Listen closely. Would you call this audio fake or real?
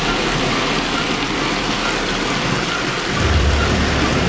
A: fake